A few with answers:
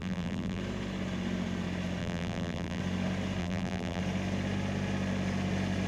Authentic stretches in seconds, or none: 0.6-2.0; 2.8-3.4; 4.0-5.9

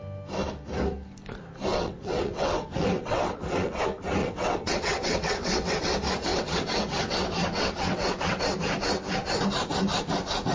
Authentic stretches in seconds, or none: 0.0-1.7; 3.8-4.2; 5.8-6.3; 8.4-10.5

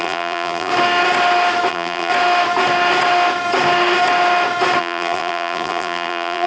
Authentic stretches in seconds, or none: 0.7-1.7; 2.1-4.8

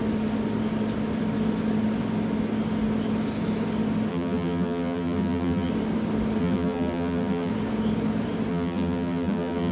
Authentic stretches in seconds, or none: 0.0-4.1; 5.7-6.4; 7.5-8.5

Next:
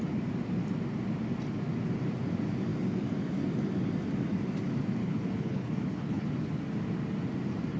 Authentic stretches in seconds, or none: 0.0-5.0; 6.5-7.8

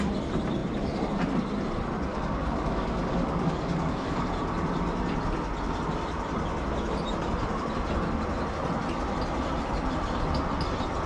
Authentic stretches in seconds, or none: 0.0-2.1; 4.3-11.1

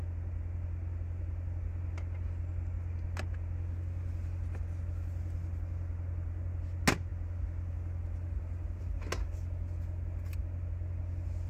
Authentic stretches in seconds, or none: 0.0-11.5

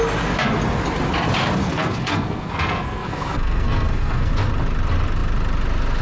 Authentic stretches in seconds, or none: 0.0-1.6; 4.3-6.0